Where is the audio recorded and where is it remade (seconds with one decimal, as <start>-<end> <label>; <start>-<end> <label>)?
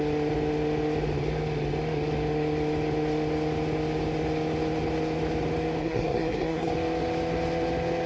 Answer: 0.0-5.8 recorded; 5.8-6.7 remade; 6.7-8.1 recorded